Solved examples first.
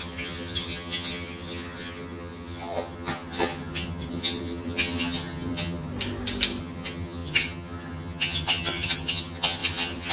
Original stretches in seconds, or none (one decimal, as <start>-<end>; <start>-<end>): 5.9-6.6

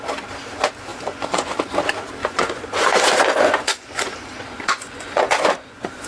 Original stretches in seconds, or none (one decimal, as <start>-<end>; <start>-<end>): 0.0-0.9; 1.5-2.2

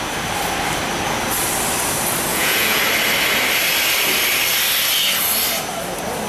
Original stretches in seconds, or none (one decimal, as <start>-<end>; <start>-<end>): 0.0-2.3; 2.8-6.3